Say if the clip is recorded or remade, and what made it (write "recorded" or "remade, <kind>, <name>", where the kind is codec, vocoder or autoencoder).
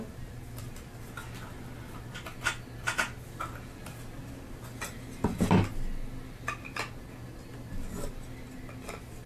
recorded